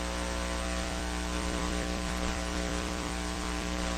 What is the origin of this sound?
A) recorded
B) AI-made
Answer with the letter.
B